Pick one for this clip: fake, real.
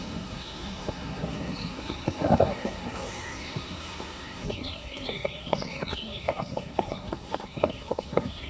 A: fake